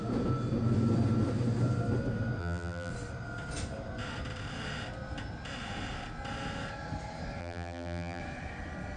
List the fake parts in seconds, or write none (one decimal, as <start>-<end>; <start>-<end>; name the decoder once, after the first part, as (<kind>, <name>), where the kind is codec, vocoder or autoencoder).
2.4-2.9 (vocoder, BigVGAN v2); 7.4-8.2